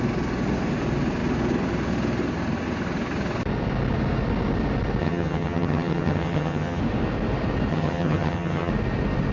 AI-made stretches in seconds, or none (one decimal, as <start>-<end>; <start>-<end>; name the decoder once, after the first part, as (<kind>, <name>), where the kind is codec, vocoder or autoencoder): 5.0-6.8 (vocoder, HiFi-GAN); 7.7-8.7